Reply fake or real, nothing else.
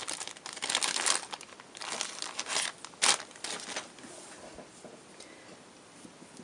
real